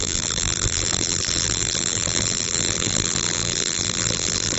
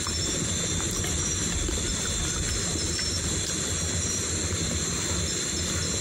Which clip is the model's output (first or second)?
first